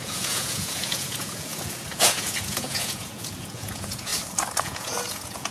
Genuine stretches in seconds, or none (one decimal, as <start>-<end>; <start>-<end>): 4.1-4.6